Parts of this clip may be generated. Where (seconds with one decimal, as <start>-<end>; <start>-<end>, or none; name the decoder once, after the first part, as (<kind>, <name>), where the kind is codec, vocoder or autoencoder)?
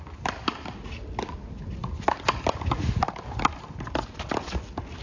none